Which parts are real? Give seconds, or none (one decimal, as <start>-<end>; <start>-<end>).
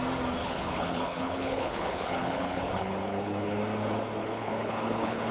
0.0-0.4; 3.6-4.2